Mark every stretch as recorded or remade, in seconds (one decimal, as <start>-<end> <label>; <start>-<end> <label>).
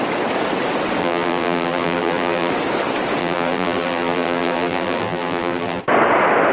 0.0-1.0 recorded; 1.0-2.5 remade; 2.5-3.2 recorded; 3.2-5.8 remade; 5.8-6.5 recorded